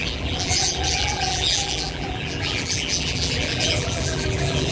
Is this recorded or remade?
remade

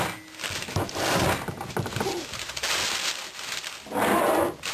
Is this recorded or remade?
recorded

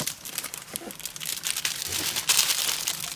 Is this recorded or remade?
recorded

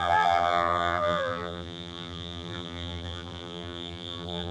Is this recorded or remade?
remade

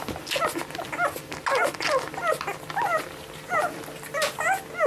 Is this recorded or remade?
recorded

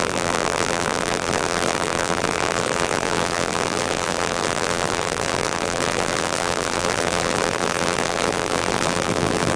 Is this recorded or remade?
remade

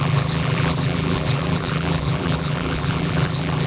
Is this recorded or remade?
remade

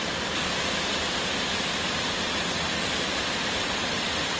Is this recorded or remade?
remade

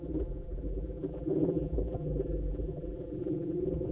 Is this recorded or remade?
remade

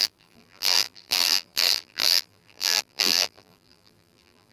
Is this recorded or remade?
remade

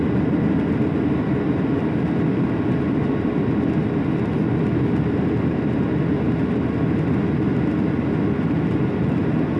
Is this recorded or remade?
recorded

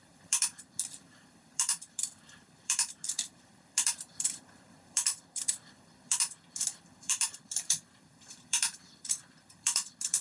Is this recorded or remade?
remade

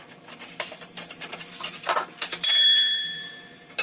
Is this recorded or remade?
remade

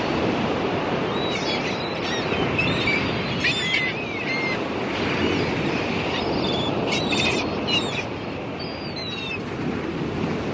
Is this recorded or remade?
recorded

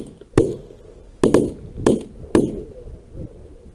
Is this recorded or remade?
recorded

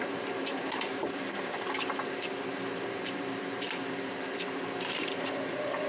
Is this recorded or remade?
remade